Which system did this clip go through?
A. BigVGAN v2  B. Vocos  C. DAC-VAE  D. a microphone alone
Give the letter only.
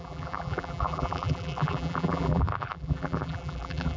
A